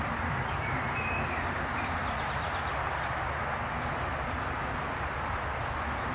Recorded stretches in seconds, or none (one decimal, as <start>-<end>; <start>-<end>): 2.0-3.9